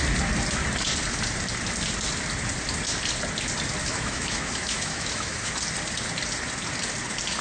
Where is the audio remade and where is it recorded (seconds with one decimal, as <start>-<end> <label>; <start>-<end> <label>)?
0.0-3.8 recorded; 3.8-5.5 remade; 5.5-7.4 recorded